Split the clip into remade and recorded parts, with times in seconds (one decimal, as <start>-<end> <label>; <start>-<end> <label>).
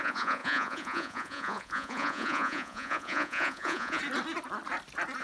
0.0-4.0 remade; 4.0-5.2 recorded